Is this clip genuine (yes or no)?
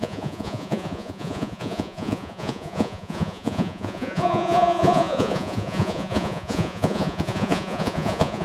no